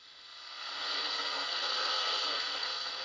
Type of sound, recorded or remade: remade